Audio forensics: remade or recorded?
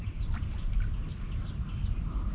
recorded